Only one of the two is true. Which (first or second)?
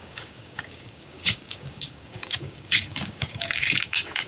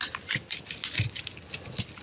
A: second